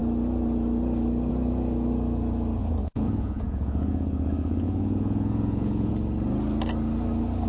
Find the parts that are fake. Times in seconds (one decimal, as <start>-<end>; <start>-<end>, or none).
2.6-5.9